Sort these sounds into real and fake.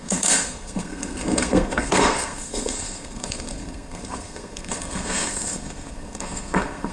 fake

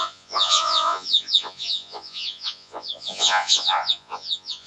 fake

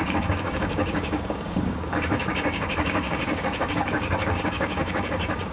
fake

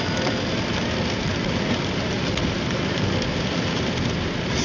fake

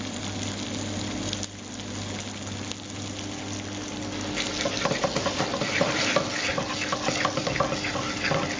real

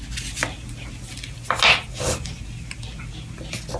real